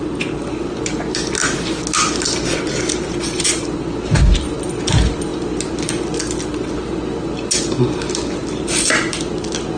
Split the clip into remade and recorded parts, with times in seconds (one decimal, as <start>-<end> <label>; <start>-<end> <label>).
0.0-9.8 recorded

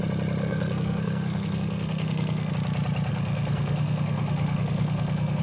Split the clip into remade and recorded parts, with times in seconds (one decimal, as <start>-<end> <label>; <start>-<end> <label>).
0.0-0.4 recorded; 0.4-2.5 remade; 2.5-3.1 recorded; 3.1-5.4 remade

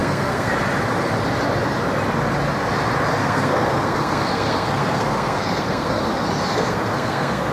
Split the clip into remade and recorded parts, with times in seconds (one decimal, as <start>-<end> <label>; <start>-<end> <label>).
0.0-0.5 remade; 0.5-3.2 recorded; 3.2-6.1 remade; 6.1-6.5 recorded; 6.5-7.5 remade

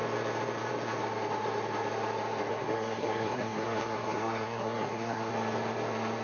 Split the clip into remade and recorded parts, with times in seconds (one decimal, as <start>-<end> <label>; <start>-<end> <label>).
0.0-2.5 recorded; 2.5-5.3 remade; 5.3-6.2 recorded

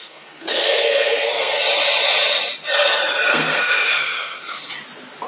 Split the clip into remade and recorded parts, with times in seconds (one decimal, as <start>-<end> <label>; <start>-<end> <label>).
0.0-1.6 remade; 1.6-3.3 recorded; 3.3-4.7 remade; 4.7-5.3 recorded